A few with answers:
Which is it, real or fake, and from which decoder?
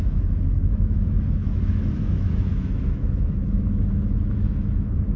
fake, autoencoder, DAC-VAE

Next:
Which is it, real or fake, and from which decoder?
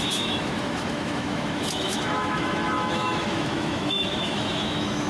fake, autoencoder, DAC-VAE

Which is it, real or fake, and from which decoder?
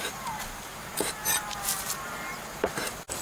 fake, vocoder, BigVGAN v2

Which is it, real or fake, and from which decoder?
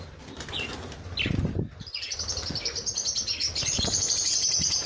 real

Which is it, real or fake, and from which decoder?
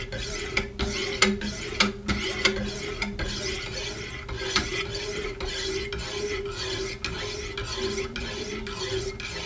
real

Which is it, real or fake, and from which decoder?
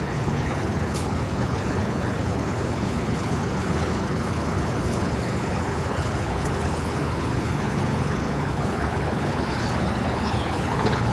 fake, codec, HILCodec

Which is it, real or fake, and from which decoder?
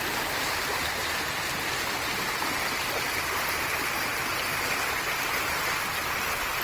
real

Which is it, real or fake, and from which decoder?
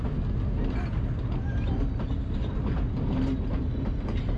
real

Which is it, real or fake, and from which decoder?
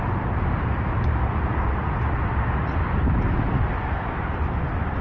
real